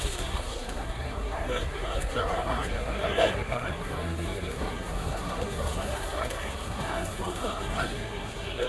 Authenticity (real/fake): fake